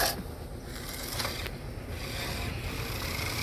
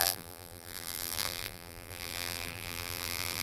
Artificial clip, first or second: second